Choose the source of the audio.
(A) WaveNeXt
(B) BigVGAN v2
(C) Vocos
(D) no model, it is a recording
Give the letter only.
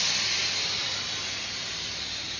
D